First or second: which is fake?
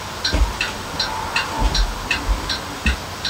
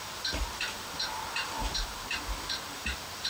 second